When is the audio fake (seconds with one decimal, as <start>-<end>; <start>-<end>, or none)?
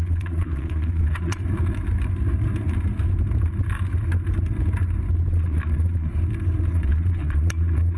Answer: 0.0-1.4; 5.3-6.1; 6.7-8.0